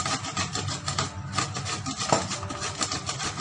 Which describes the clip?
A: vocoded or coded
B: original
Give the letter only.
B